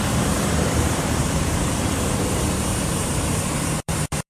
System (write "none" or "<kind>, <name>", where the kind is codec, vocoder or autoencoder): vocoder, BigVGAN v2